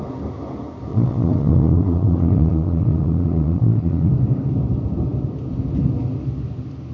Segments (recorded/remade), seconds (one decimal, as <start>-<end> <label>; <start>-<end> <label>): 0.0-0.9 recorded; 0.9-4.1 remade; 4.1-6.9 recorded